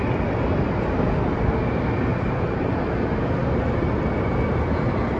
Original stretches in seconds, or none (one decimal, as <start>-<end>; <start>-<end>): 0.0-2.1; 2.8-3.4; 4.0-5.2